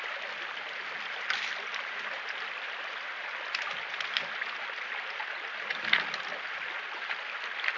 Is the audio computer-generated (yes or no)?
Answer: no